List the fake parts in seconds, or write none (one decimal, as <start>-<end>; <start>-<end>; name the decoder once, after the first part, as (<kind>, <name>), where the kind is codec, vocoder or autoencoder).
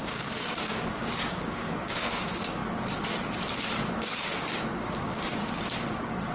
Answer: 0.0-2.6 (codec, DAC); 4.0-5.4